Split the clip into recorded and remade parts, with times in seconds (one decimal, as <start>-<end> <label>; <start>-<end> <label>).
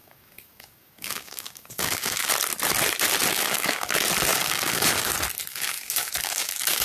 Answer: 0.0-2.3 remade; 2.3-3.3 recorded; 3.3-3.9 remade; 3.9-4.3 recorded; 4.3-5.1 remade; 5.1-5.5 recorded; 5.5-6.8 remade